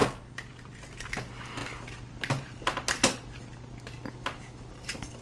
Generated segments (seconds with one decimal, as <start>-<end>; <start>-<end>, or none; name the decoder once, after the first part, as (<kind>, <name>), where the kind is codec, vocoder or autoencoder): none